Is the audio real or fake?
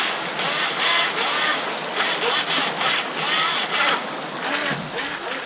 real